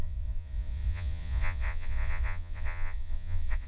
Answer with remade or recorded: remade